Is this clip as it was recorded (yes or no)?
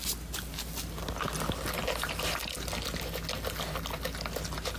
yes